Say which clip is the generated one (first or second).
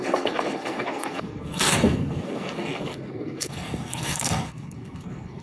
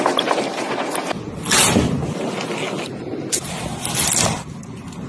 first